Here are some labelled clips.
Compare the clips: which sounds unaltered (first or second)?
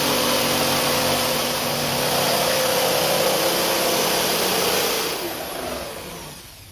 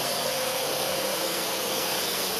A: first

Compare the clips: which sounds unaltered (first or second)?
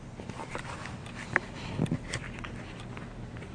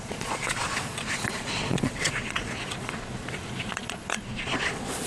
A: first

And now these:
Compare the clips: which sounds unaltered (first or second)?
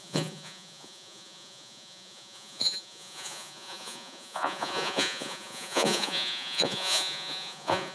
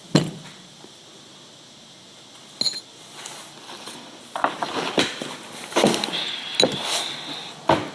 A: second